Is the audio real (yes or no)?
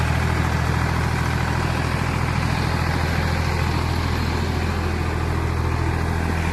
yes